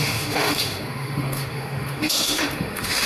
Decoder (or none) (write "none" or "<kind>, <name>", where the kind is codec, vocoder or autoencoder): autoencoder, DAC-VAE